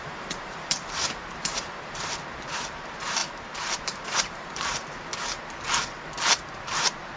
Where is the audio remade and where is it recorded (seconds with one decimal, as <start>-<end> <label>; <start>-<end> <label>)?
0.0-5.1 remade; 5.1-6.2 recorded; 6.2-7.2 remade